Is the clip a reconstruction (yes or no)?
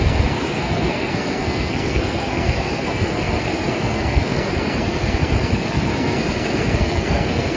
yes